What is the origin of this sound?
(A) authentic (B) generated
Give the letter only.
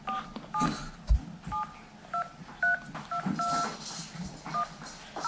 A